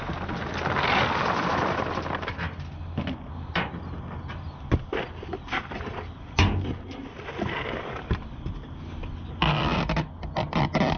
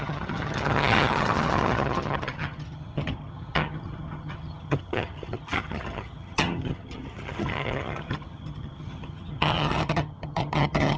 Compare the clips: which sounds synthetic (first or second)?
second